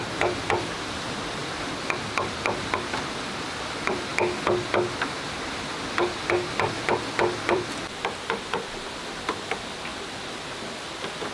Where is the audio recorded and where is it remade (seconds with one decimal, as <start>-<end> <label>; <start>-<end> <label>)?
0.0-1.4 remade; 1.4-2.1 recorded; 2.1-4.1 remade; 4.1-7.5 recorded; 7.5-11.3 remade